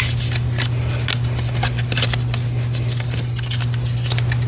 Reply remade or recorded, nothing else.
recorded